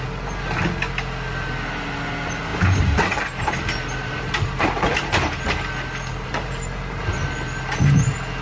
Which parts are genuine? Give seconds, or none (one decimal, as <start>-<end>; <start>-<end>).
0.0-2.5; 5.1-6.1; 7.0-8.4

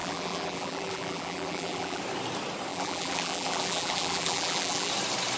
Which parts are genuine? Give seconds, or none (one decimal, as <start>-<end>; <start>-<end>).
2.0-2.7; 4.9-5.4

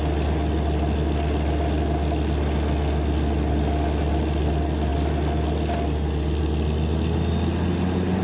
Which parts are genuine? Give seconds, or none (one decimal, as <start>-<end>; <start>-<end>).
0.0-8.2

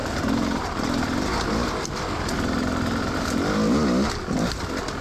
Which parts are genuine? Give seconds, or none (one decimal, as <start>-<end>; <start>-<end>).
0.0-5.0

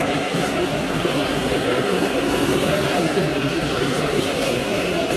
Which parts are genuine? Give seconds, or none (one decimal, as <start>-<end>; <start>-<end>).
none

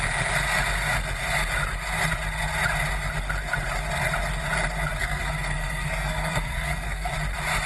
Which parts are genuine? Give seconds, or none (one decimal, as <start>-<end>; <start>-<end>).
0.0-5.0; 7.1-7.7

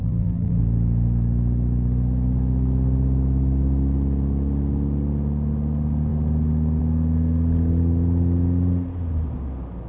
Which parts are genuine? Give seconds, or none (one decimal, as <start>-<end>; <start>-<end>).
0.6-9.9